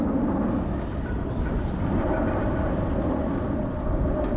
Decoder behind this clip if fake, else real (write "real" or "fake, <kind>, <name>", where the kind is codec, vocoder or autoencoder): real